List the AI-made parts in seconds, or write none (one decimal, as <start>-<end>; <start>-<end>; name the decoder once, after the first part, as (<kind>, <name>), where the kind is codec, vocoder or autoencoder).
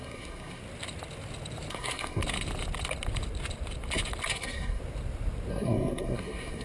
0.0-0.6 (codec, SNAC); 1.7-2.2; 4.3-4.8; 5.5-6.6